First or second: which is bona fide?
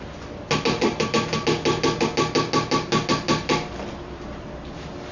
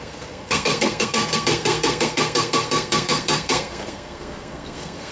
first